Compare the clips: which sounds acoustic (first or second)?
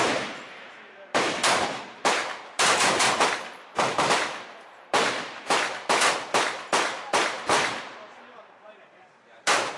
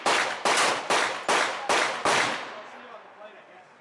second